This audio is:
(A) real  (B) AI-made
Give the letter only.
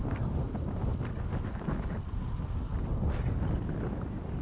A